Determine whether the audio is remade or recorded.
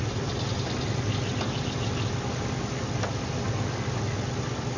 recorded